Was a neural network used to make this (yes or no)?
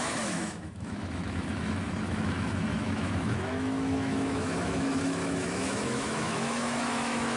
yes